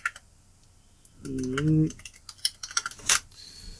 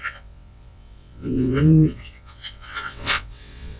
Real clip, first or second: first